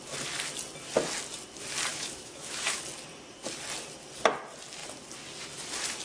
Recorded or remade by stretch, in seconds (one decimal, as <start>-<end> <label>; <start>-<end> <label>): 0.0-1.9 recorded; 1.9-2.8 remade; 2.8-6.0 recorded